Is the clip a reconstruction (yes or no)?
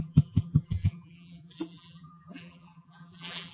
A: yes